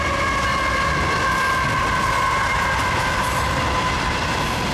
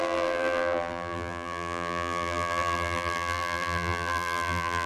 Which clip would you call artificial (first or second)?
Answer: second